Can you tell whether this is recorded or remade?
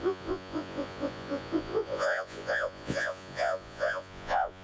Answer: remade